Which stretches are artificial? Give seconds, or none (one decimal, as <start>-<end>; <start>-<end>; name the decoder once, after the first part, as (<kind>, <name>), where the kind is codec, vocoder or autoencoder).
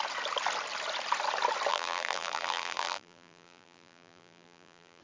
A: 1.7-5.0 (vocoder, BigVGAN v2)